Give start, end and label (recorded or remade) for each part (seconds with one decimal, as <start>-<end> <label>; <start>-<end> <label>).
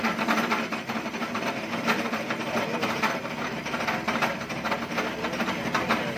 0.0-6.2 recorded